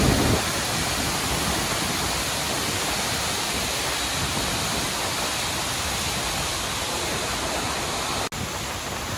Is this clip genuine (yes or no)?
yes